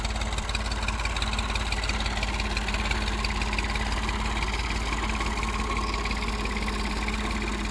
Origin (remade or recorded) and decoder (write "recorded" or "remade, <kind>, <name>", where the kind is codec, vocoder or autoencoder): recorded